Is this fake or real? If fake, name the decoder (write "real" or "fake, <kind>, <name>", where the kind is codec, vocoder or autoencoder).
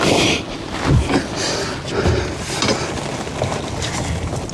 real